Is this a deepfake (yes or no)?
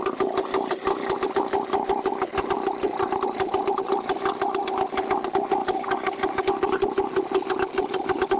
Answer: no